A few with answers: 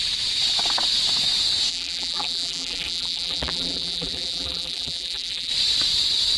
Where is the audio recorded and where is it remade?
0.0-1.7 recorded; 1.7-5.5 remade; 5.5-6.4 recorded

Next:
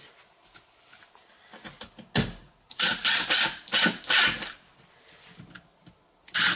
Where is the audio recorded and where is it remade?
0.0-6.6 recorded

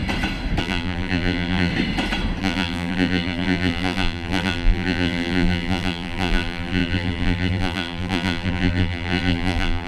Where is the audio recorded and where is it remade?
0.0-0.6 recorded; 0.6-1.7 remade; 1.7-2.4 recorded; 2.4-9.9 remade

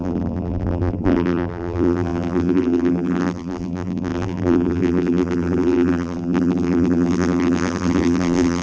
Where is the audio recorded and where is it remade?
0.0-8.6 remade